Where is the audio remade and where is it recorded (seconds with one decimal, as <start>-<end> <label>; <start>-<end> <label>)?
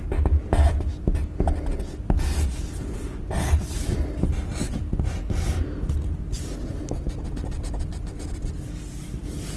0.0-9.6 recorded